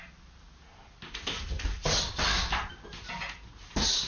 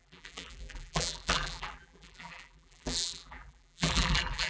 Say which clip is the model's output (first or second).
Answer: second